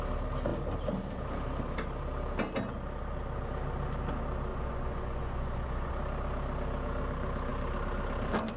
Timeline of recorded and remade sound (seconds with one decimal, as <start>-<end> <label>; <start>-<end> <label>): 0.0-4.5 recorded; 4.5-5.9 remade; 5.9-8.6 recorded